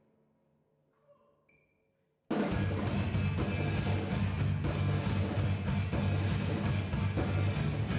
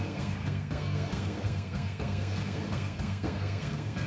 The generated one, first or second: second